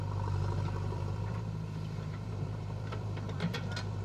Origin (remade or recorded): remade